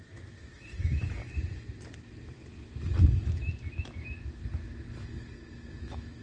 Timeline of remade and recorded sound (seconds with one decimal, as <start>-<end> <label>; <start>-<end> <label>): 0.0-1.2 remade; 1.2-3.7 recorded; 3.7-4.4 remade; 4.4-5.8 recorded; 5.8-6.2 remade